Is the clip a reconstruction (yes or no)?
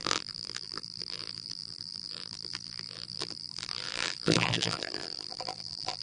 yes